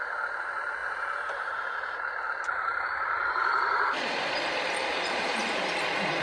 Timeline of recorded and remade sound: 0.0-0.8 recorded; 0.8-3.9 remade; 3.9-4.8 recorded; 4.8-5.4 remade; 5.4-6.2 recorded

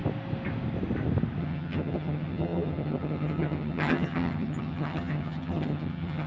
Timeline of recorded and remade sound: 0.0-1.4 recorded; 1.4-6.3 remade

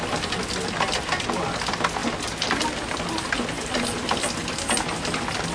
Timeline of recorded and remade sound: 0.0-5.5 recorded

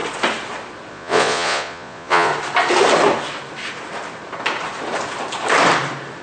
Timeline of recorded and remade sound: 0.0-0.9 recorded; 0.9-2.3 remade; 2.3-6.2 recorded

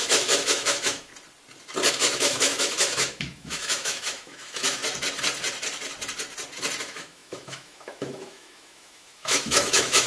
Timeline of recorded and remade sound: 0.0-1.1 remade; 1.1-1.9 recorded; 1.9-4.8 remade; 4.8-6.8 recorded; 6.8-10.1 remade

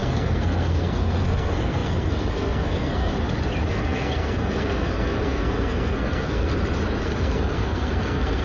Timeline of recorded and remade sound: 0.0-3.1 remade; 3.1-3.7 recorded; 3.7-6.5 remade; 6.5-7.0 recorded; 7.0-8.4 remade

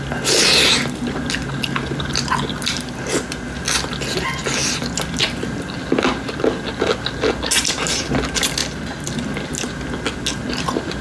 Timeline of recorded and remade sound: 0.0-11.0 recorded